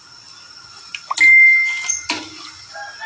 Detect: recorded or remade recorded